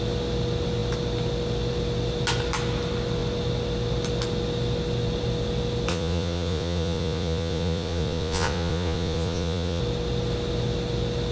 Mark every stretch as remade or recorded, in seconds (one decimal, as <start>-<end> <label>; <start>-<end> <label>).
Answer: 0.0-5.9 recorded; 5.9-9.8 remade; 9.8-11.3 recorded